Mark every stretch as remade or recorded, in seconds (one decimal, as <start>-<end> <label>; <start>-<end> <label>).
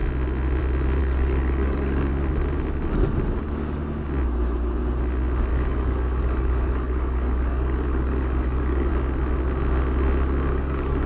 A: 0.0-1.0 recorded; 1.0-2.1 remade; 2.1-5.5 recorded; 5.5-8.9 remade; 8.9-10.5 recorded; 10.5-11.1 remade